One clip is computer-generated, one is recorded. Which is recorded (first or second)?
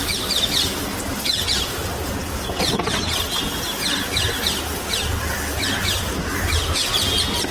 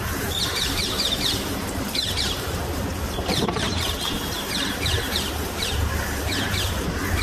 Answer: first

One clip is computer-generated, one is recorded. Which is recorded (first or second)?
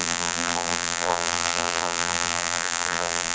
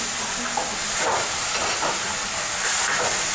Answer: second